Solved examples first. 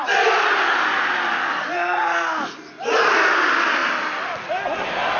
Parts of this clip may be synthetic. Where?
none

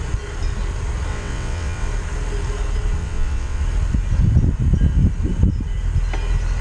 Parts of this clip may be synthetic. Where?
1.1-1.9 (vocoder, WaveNeXt); 3.0-3.6

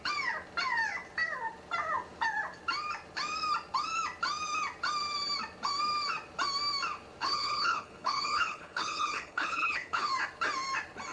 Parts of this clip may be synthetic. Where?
7.2-10.1 (codec, HILCodec)